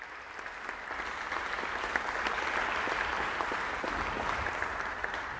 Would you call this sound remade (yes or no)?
no